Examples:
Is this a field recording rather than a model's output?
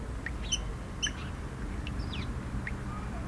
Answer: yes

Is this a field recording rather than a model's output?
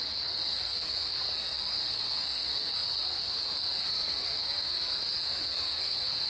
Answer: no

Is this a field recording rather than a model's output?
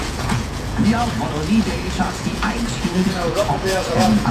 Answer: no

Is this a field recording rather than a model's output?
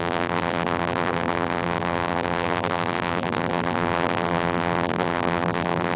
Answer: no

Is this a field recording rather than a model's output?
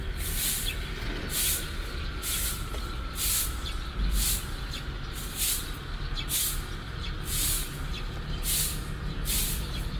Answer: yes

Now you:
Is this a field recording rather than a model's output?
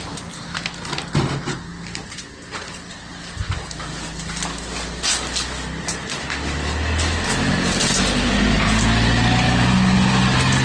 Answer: yes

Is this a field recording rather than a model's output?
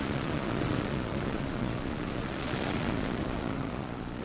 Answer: no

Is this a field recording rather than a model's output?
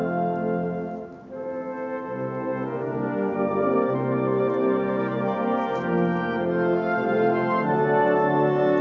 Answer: yes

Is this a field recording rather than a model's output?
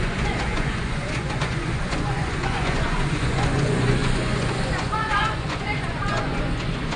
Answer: no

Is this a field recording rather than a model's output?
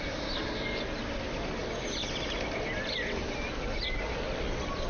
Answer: yes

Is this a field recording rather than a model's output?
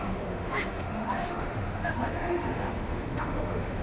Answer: no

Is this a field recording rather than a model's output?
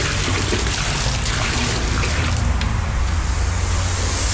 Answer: yes